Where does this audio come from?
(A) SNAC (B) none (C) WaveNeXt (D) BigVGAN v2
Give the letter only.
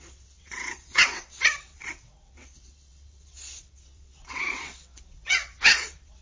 C